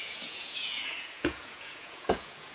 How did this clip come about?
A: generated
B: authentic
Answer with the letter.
A